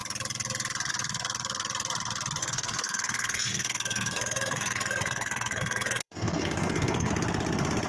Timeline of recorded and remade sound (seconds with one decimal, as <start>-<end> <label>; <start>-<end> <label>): 0.0-2.4 recorded; 2.4-7.1 remade; 7.1-7.9 recorded